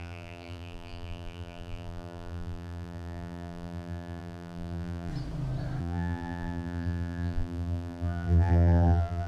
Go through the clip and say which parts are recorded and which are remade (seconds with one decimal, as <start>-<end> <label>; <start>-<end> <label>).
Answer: 0.0-5.1 remade; 5.1-5.8 recorded; 5.8-9.3 remade